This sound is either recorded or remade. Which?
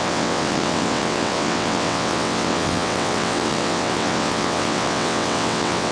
remade